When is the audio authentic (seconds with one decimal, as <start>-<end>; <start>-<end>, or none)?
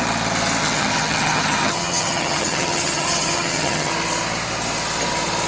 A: 0.0-0.6; 3.9-5.5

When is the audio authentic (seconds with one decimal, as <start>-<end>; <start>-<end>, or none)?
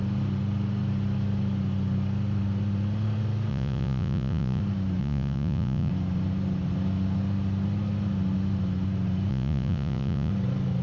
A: 0.0-3.5; 4.6-5.0; 5.9-9.3; 10.3-10.8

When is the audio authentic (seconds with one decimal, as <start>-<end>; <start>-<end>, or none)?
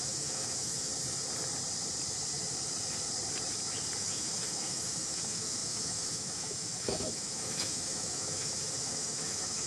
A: 0.9-4.0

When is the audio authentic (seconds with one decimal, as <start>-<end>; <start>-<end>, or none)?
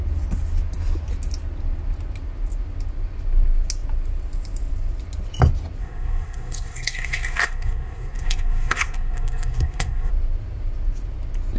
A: 0.0-5.8; 10.1-11.6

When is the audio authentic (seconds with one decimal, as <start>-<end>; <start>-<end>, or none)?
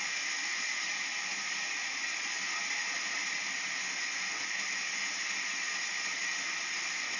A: 0.0-7.2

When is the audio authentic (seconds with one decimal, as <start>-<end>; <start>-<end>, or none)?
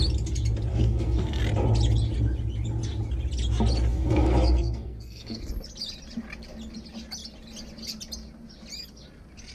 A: 0.0-0.7; 1.4-3.9; 5.5-9.5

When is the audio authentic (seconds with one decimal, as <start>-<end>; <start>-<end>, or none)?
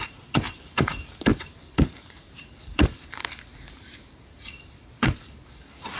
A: none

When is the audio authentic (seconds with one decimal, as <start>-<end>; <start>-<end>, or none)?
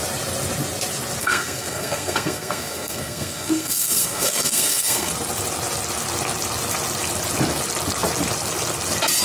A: 0.0-1.2; 5.1-9.2